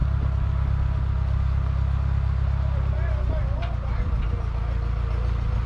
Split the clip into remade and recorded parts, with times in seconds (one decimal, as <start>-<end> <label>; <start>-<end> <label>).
0.0-5.7 recorded